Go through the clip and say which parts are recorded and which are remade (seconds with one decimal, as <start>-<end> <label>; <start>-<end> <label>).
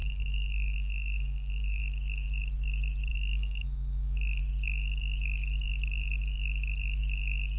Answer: 0.0-1.8 remade; 1.8-3.1 recorded; 3.1-4.4 remade; 4.4-7.6 recorded